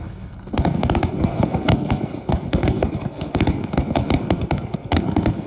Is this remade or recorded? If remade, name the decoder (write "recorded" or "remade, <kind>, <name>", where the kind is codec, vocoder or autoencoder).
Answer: remade, codec, SNAC